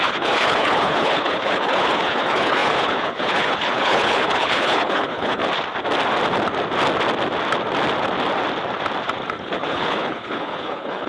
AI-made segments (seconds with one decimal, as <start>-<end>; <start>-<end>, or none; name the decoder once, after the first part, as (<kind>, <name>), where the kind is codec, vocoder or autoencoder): 0.0-5.4 (codec, HILCodec); 9.4-11.1